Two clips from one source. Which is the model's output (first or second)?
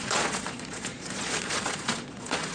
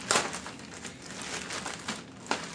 first